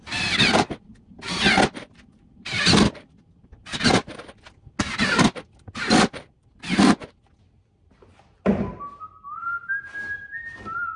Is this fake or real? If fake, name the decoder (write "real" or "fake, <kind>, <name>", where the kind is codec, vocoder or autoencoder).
real